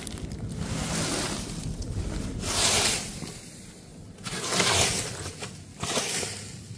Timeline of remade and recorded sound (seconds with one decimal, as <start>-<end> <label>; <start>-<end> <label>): 0.0-6.8 recorded